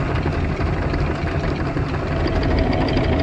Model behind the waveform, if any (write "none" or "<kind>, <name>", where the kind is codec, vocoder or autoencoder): none